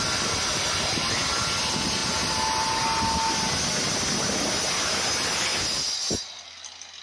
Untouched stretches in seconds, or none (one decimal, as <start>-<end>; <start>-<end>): 0.0-7.0